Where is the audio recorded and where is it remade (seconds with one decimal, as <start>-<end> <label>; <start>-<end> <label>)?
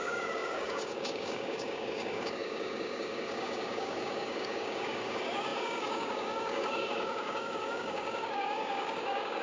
0.0-9.4 remade